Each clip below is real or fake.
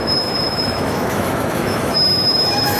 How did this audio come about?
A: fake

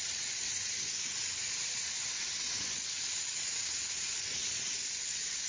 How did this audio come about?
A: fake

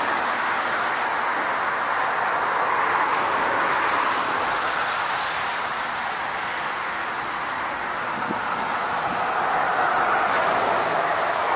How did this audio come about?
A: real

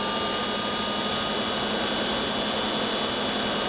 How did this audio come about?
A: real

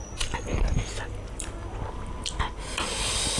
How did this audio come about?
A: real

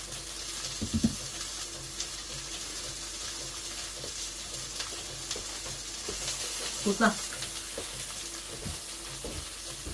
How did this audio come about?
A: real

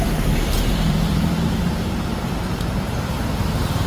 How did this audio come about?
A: fake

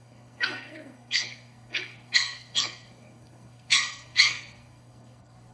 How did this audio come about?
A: fake